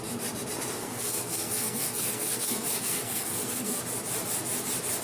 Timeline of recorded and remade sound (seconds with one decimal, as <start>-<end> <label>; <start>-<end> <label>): 0.0-0.8 recorded; 0.8-3.8 remade; 3.8-5.0 recorded

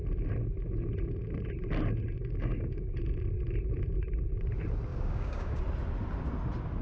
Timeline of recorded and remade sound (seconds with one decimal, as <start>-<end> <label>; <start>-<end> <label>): 0.0-2.2 recorded; 2.2-3.0 remade; 3.0-4.9 recorded; 4.9-5.6 remade; 5.6-6.8 recorded

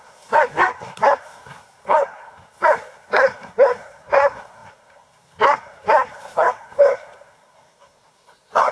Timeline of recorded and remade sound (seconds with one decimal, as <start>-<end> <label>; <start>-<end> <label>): 0.0-8.7 remade